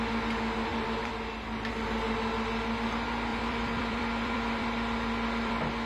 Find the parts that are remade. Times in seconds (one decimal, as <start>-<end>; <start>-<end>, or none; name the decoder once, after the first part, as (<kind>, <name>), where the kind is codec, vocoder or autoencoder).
0.7-1.7 (vocoder, BigVGAN v2); 3.3-5.5